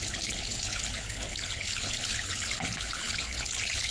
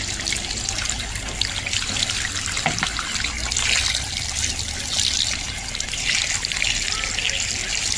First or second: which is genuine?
second